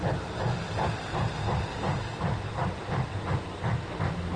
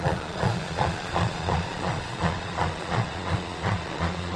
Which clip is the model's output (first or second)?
second